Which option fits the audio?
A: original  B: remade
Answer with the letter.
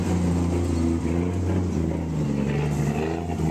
A